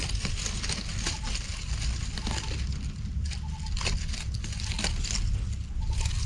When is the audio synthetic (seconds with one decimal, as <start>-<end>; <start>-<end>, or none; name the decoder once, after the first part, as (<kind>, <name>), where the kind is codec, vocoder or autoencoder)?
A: none

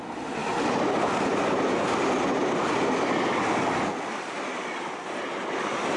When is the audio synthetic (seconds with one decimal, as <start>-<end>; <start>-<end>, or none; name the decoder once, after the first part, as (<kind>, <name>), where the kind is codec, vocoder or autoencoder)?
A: none

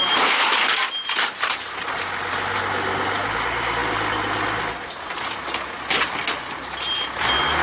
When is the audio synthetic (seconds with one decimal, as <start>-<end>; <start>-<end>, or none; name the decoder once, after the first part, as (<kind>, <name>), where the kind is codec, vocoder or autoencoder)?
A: none

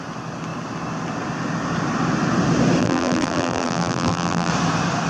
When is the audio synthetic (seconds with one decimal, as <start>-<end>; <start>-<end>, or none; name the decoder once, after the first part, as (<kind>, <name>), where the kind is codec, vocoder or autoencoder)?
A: 2.8-4.5 (vocoder, BigVGAN v2)

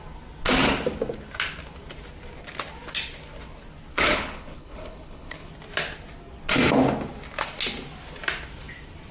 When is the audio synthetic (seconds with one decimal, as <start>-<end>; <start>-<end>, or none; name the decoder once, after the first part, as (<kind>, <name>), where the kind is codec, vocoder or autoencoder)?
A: 3.9-5.5 (codec, HILCodec)